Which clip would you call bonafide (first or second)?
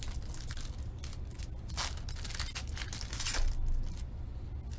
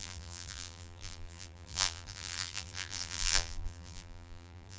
first